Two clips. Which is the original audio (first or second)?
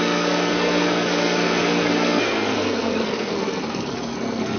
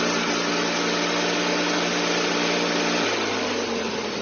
second